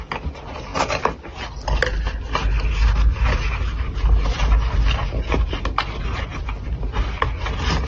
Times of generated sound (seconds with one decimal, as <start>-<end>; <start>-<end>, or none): none